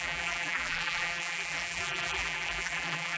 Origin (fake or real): fake